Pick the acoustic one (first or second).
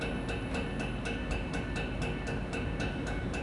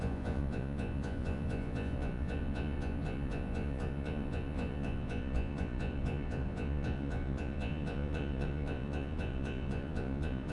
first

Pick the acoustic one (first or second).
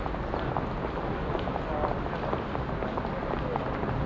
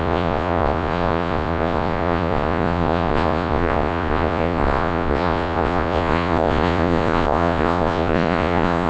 first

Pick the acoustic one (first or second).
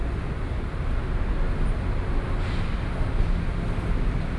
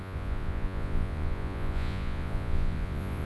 first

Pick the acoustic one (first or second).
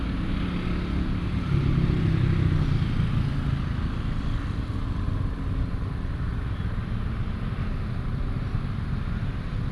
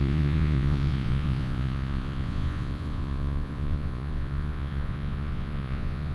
first